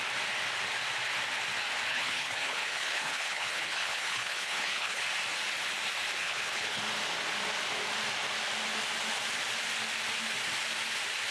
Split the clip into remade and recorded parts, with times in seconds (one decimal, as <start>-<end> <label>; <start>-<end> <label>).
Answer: 0.0-1.9 recorded; 1.9-5.0 remade; 5.0-6.2 recorded; 6.2-6.8 remade; 6.8-11.3 recorded